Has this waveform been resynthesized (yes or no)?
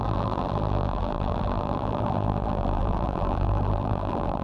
yes